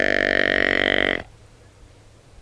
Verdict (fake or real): fake